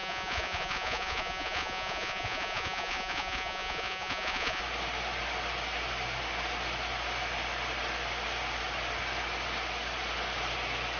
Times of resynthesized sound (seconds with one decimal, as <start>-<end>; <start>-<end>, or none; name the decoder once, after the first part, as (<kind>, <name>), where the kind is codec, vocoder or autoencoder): 0.0-4.6 (vocoder, Vocos)

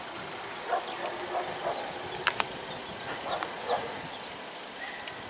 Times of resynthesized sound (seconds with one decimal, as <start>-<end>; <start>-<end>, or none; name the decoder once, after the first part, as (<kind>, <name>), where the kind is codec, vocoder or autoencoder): 2.8-4.2 (vocoder, Vocos)

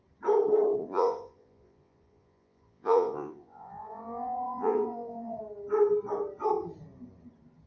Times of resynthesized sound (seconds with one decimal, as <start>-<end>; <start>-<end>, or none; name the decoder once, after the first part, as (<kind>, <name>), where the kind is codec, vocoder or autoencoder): 0.8-5.4 (vocoder, Vocos)

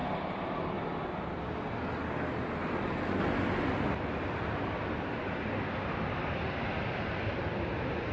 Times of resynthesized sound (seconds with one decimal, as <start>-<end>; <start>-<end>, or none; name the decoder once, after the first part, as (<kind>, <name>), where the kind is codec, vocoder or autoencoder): none